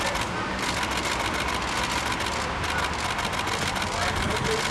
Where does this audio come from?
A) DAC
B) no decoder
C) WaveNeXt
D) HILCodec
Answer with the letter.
B